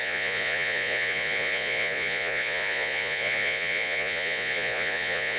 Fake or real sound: fake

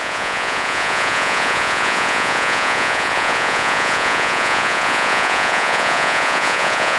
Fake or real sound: fake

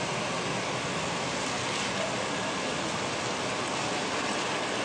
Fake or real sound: real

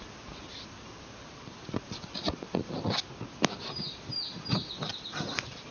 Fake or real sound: real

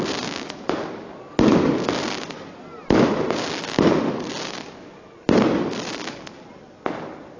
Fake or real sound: real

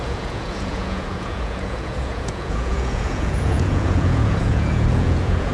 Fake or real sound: fake